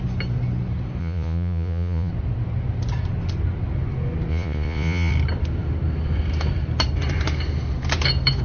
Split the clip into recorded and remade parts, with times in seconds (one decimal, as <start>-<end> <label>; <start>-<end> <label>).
0.0-1.0 recorded; 1.0-2.1 remade; 2.1-4.3 recorded; 4.3-5.1 remade; 5.1-8.4 recorded